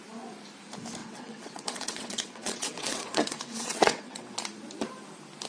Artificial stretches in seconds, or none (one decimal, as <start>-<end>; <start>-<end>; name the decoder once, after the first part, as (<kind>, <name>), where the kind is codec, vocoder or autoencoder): 1.0-4.3 (vocoder, WaveNeXt)